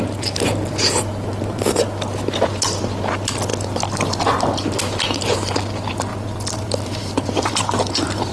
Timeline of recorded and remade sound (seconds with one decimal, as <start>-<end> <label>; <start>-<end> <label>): 0.0-3.5 recorded; 3.5-4.2 remade; 4.2-6.1 recorded; 6.1-8.3 remade